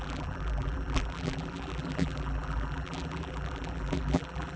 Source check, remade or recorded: remade